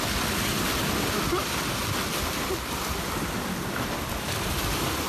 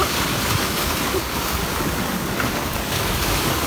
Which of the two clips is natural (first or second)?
first